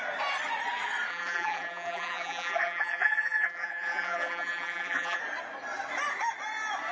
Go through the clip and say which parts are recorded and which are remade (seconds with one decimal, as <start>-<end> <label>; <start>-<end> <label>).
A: 0.0-1.1 recorded; 1.1-5.2 remade; 5.2-6.9 recorded